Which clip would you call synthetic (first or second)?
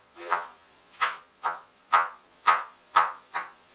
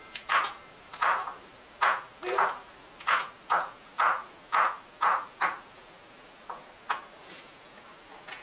first